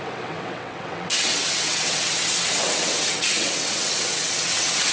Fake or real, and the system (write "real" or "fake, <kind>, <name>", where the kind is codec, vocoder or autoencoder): fake, vocoder, WaveNeXt